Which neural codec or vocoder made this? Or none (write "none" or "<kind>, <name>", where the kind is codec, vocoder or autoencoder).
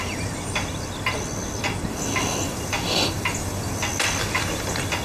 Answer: none